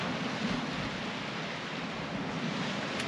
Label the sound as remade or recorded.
recorded